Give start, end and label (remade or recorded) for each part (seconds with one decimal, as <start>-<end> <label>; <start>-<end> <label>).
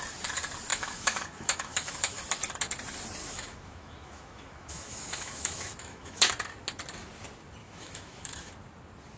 0.0-0.7 recorded; 0.7-2.2 remade; 2.2-3.2 recorded; 3.2-6.3 remade; 6.3-7.6 recorded; 7.6-8.5 remade; 8.5-9.2 recorded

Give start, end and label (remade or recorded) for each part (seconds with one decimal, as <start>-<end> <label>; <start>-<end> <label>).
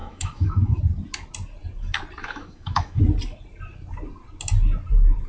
0.0-0.8 remade; 0.8-2.2 recorded; 2.2-3.0 remade; 3.0-5.3 recorded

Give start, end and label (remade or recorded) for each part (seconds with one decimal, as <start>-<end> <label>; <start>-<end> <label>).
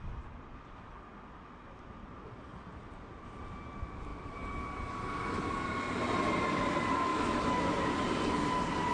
0.0-7.1 recorded; 7.1-7.7 remade; 7.7-8.9 recorded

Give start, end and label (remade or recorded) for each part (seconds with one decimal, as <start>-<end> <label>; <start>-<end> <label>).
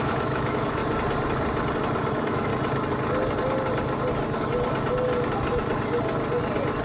0.0-0.8 remade; 0.8-2.1 recorded; 2.1-2.5 remade; 2.5-6.8 recorded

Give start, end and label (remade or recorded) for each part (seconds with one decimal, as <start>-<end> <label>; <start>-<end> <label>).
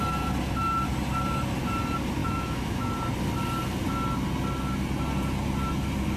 0.0-2.2 recorded; 2.2-2.9 remade; 2.9-6.2 recorded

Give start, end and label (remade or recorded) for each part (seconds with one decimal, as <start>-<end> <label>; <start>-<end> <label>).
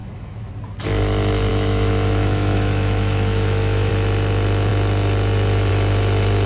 0.0-0.5 remade; 0.5-1.5 recorded; 1.5-3.9 remade; 3.9-6.5 recorded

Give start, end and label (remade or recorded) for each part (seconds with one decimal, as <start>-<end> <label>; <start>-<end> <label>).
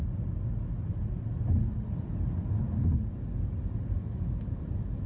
0.0-4.0 recorded; 4.0-4.6 remade; 4.6-5.1 recorded